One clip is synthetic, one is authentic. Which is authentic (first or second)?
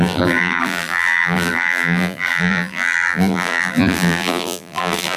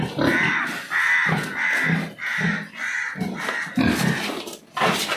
second